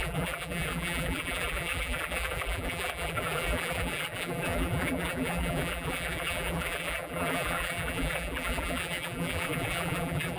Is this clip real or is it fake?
fake